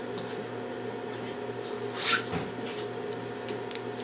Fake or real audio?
real